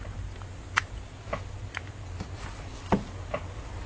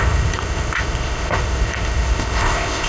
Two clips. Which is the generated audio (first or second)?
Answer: second